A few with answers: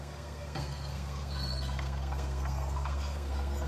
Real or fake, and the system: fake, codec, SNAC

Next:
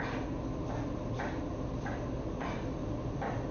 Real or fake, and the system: real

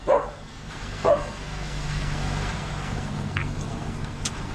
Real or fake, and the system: fake, codec, SNAC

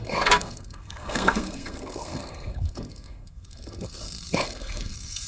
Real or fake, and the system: fake, codec, SNAC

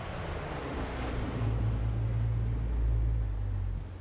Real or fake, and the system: real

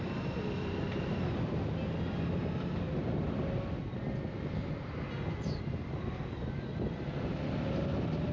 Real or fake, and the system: real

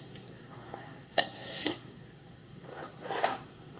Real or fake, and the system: fake, codec, SNAC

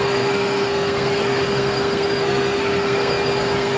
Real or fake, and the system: fake, codec, SNAC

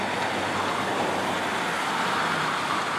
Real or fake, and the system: real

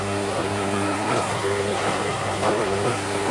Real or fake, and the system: fake, codec, SNAC